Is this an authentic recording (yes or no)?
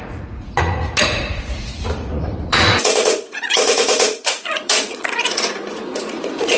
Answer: no